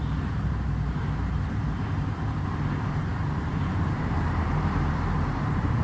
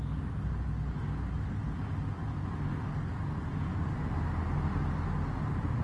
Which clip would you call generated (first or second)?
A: first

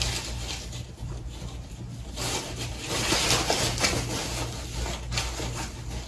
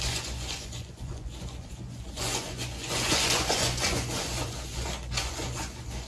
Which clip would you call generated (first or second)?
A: second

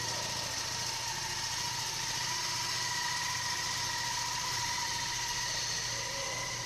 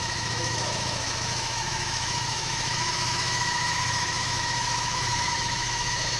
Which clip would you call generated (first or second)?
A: second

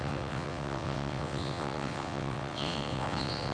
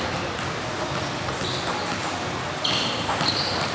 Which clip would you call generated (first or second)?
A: first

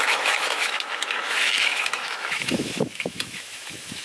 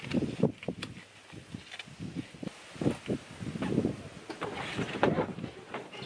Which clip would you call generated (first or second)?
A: first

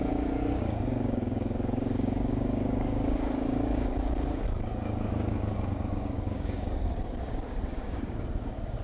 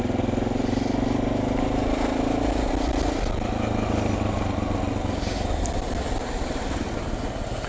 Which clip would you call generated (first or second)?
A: first